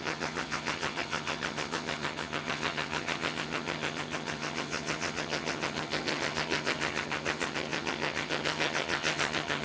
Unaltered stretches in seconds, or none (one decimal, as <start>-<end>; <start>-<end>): none